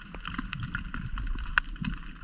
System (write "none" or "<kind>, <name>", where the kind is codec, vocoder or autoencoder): none